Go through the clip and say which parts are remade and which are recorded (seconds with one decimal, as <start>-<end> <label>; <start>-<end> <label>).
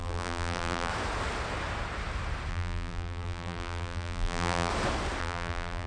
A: 0.0-0.9 remade; 0.9-2.5 recorded; 2.5-4.7 remade; 4.7-5.2 recorded; 5.2-5.9 remade